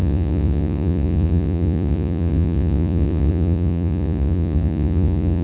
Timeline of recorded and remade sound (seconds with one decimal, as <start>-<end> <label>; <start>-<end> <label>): 0.0-5.4 remade